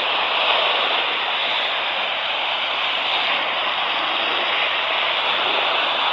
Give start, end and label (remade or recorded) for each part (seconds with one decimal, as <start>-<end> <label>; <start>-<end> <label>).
0.0-1.4 recorded; 1.4-2.6 remade; 2.6-6.1 recorded